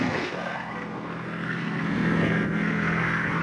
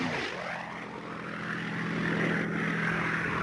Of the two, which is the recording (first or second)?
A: second